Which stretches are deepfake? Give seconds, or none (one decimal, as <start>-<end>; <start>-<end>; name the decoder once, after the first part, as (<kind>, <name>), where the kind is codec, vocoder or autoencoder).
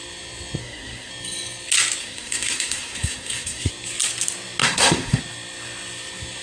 0.6-1.1 (codec, SNAC); 2.0-3.7; 4.6-5.2